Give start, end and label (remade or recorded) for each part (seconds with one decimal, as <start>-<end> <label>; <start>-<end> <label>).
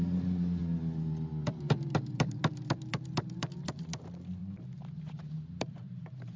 0.0-0.6 remade; 0.6-1.5 recorded; 1.5-4.4 remade; 4.4-5.0 recorded; 5.0-6.4 remade